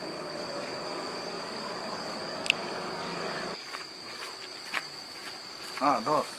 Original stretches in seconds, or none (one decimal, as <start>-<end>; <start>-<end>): 4.2-5.8